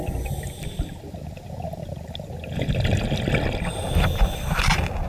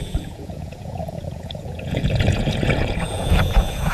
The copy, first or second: second